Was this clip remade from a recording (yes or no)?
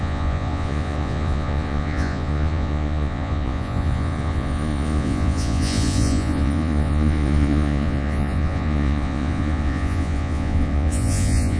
yes